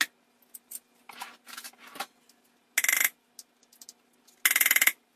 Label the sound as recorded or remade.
recorded